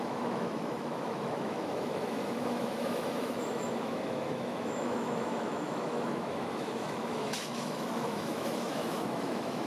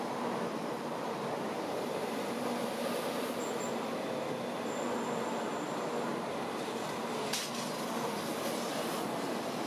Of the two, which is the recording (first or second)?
second